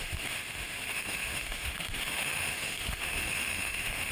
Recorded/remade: remade